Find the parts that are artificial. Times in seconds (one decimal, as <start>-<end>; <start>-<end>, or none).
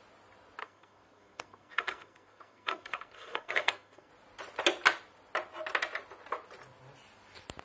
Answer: 0.6-4.1